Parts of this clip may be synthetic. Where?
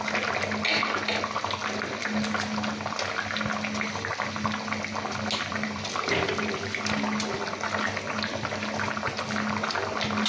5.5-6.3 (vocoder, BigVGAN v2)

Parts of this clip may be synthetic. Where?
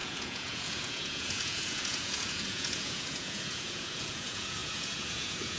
0.0-5.6 (vocoder, Vocos)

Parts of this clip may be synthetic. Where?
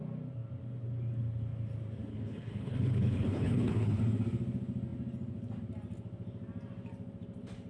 2.1-4.0 (codec, HILCodec)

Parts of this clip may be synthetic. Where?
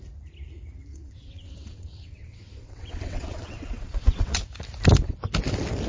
0.9-4.4 (vocoder, WaveNeXt)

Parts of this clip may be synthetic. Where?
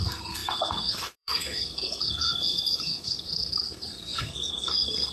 0.0-5.1 (codec, SNAC)